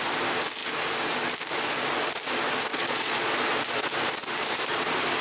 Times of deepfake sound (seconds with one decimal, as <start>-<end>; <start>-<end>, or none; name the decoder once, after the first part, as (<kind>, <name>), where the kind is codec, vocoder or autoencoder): 2.7-3.3 (vocoder, Vocos)

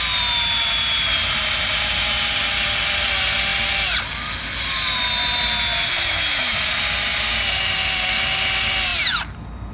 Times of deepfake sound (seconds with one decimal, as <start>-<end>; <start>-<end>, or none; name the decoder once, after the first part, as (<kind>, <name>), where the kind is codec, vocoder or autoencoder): 5.9-6.6 (autoencoder, DAC-VAE)

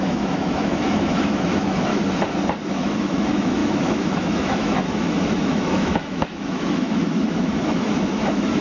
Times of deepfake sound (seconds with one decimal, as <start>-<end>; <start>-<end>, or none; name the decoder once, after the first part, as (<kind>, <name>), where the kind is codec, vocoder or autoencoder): 0.0-1.9 (autoencoder, DAC-VAE); 2.7-8.6

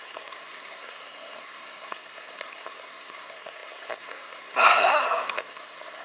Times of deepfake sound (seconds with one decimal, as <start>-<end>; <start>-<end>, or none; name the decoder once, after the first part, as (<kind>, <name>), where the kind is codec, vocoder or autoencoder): 0.0-6.0 (codec, SNAC)

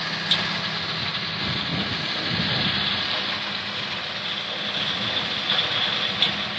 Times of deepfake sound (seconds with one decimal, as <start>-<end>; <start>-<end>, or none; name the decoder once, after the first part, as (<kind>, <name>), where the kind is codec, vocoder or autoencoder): none

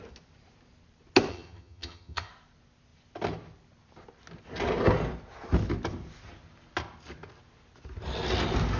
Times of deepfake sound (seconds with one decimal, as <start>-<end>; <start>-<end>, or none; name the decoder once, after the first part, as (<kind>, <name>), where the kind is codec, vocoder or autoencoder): 1.3-2.3 (vocoder, HiFi-GAN)